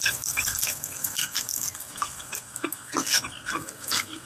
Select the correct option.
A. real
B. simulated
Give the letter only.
B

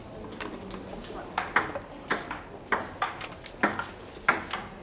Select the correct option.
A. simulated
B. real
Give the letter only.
B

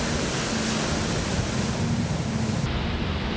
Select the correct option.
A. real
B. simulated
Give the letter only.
A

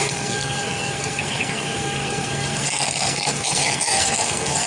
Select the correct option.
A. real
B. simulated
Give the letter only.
B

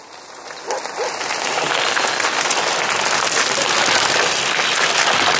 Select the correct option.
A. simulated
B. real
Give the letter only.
B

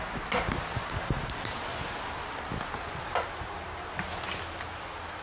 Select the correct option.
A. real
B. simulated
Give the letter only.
A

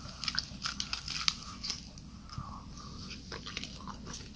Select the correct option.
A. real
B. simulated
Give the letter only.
A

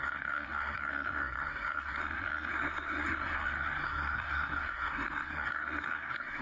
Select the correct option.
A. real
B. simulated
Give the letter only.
B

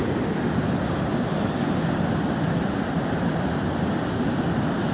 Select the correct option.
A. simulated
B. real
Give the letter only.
B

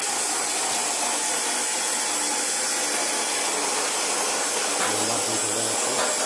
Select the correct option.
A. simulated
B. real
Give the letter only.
B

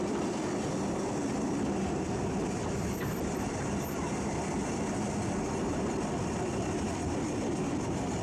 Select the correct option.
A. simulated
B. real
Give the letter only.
B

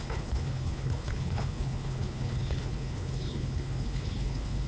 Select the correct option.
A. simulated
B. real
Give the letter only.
A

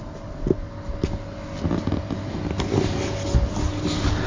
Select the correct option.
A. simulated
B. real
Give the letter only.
B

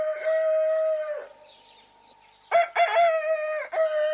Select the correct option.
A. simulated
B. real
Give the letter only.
B